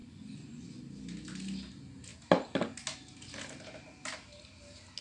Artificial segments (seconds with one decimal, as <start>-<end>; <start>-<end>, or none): 0.0-0.8